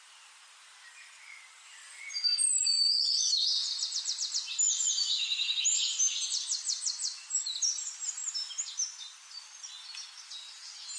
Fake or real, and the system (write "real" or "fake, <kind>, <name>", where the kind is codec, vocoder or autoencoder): real